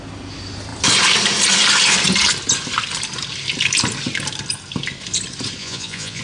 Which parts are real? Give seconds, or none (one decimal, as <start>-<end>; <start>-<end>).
0.0-5.6